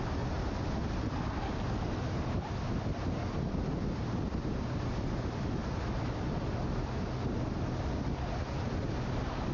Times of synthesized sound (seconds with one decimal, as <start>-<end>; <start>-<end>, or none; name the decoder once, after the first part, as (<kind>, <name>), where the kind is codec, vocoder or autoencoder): none